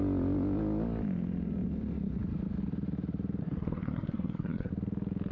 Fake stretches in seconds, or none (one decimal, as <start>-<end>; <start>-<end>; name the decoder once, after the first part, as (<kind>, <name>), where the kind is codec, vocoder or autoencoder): 3.4-4.7 (codec, SNAC)